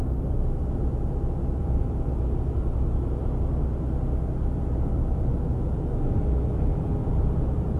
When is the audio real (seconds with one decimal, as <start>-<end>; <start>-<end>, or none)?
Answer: 0.0-5.3; 7.1-7.8